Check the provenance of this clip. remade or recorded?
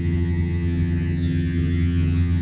remade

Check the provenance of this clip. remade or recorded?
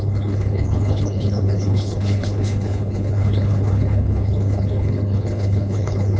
remade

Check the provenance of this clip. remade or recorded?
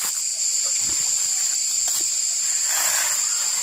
recorded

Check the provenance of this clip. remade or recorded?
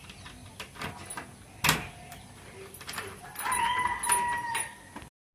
recorded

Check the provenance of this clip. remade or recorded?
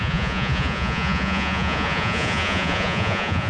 remade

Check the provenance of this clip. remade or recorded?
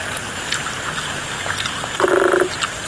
recorded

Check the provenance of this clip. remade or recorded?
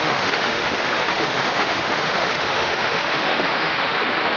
remade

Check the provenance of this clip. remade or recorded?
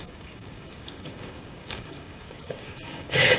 remade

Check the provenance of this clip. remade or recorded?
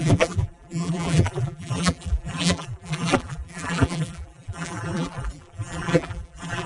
remade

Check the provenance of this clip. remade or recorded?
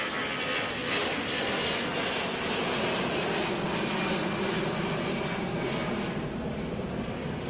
recorded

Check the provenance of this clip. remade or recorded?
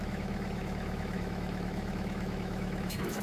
remade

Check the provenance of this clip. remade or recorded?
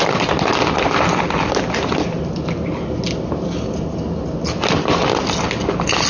recorded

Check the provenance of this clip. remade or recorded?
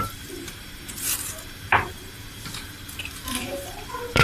remade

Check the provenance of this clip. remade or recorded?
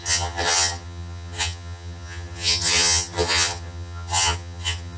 remade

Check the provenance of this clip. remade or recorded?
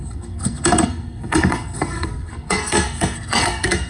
remade